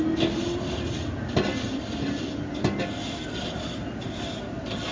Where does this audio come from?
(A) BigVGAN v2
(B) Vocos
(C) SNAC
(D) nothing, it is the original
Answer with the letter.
D